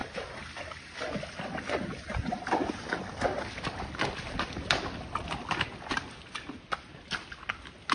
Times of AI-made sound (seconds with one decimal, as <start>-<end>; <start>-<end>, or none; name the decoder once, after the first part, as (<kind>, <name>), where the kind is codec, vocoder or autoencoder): none